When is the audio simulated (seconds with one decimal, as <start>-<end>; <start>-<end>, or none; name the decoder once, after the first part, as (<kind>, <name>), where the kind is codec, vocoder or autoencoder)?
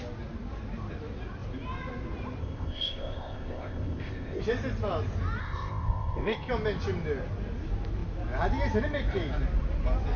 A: 2.4-4.4 (codec, ZipCodec); 5.4-6.5